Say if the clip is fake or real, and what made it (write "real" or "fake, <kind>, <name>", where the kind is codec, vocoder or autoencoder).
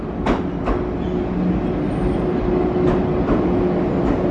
real